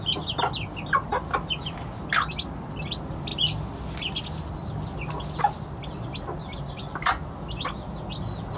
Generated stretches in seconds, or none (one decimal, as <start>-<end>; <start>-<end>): none